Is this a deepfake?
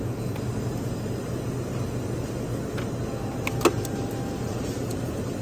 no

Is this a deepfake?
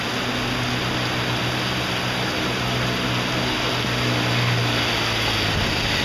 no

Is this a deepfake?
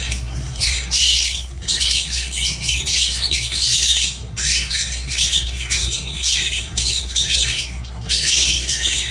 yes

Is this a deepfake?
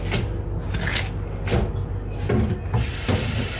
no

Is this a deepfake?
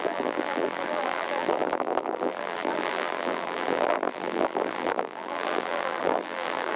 yes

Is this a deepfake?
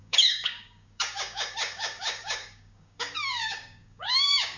yes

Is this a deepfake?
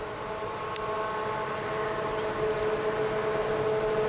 no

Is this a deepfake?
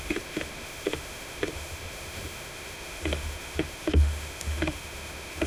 yes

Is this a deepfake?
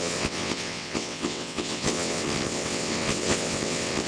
yes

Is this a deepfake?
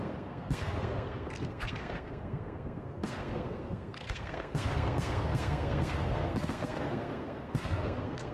yes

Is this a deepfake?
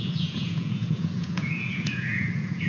yes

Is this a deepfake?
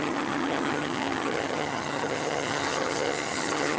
yes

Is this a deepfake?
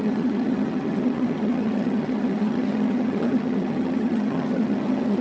yes